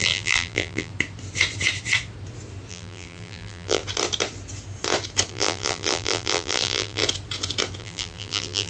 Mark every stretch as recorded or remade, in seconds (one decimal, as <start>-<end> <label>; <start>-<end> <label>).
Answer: 0.0-0.9 remade; 0.9-2.7 recorded; 2.7-3.8 remade; 3.8-5.3 recorded; 5.3-7.0 remade; 7.0-7.8 recorded; 7.8-8.7 remade